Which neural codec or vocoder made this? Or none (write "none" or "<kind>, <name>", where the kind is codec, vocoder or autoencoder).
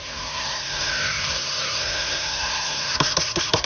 codec, SNAC